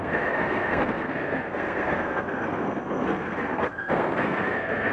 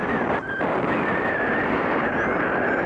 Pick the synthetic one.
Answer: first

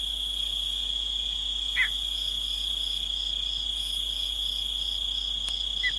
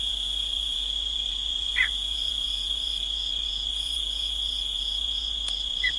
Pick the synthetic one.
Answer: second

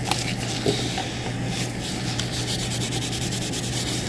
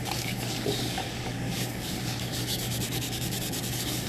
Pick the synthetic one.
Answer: second